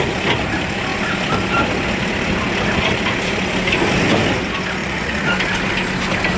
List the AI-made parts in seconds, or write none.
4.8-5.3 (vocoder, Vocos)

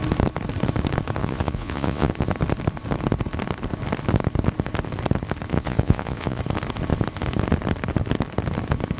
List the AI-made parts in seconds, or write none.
1.2-2.1 (vocoder, Vocos); 5.5-6.4

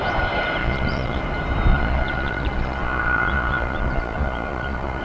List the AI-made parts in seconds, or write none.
0.6-1.2 (vocoder, Vocos); 1.7-5.0

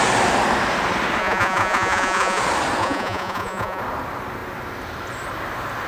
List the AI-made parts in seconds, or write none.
1.2-2.4 (vocoder, Vocos); 2.8-3.8

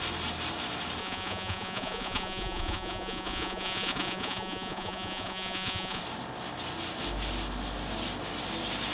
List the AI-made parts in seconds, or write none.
1.0-6.0 (vocoder, Vocos)

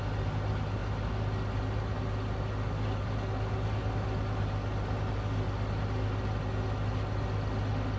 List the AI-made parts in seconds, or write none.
none